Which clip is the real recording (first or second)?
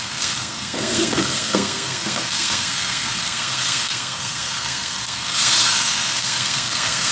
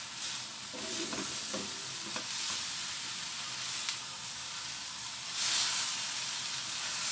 second